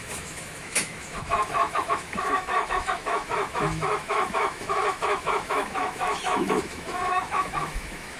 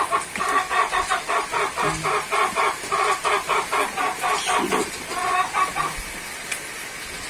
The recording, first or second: second